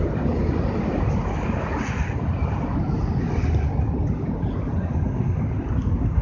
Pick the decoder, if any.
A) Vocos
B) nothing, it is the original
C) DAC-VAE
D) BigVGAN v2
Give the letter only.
B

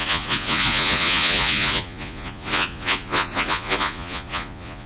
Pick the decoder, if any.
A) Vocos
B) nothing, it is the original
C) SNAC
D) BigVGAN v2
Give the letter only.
A